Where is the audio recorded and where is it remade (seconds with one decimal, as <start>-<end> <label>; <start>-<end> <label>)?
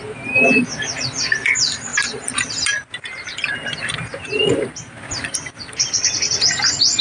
0.0-7.0 recorded